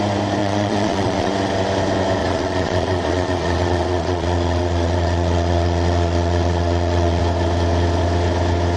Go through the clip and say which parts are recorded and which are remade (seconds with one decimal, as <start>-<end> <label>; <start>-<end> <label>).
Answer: 0.0-0.4 recorded; 0.4-1.3 remade; 1.3-2.2 recorded; 2.2-7.2 remade; 7.2-8.8 recorded